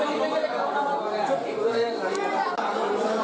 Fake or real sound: real